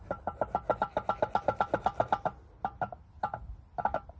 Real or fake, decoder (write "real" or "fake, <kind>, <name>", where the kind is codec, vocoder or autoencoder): real